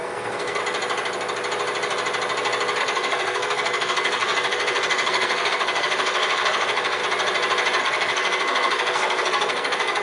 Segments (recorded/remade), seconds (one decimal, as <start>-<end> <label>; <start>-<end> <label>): 0.0-0.6 remade; 0.6-2.8 recorded; 2.8-7.0 remade; 7.0-7.8 recorded; 7.8-10.0 remade